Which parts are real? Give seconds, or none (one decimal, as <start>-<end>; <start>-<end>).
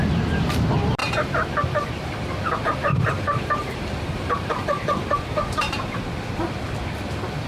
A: 0.0-1.0; 1.9-2.9; 6.1-7.5